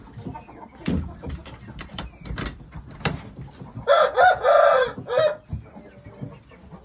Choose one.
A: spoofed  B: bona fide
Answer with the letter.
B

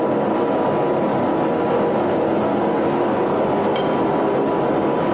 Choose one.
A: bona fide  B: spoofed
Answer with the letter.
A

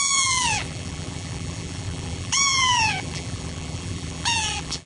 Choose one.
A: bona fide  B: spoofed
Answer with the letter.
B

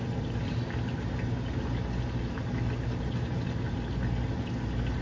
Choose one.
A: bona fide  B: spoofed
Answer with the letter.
A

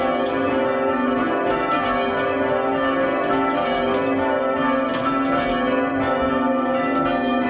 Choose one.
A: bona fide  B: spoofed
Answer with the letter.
A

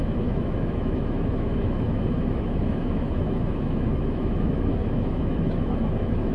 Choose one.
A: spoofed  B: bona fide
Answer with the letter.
A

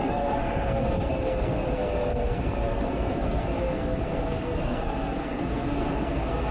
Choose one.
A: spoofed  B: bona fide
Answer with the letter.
A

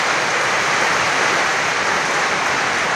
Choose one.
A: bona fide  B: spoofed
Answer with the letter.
A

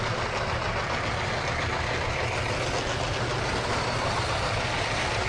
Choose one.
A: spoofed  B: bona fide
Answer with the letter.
B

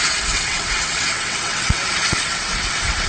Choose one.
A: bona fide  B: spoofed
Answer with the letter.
B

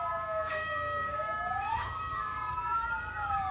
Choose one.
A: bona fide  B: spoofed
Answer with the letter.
B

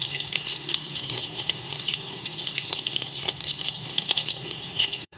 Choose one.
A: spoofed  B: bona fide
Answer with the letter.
A